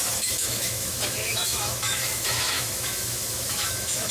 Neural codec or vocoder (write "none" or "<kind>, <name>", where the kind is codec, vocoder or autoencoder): autoencoder, DAC-VAE